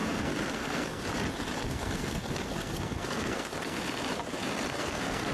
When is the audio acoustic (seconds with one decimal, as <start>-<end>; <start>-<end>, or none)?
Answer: 1.0-1.6; 3.8-4.8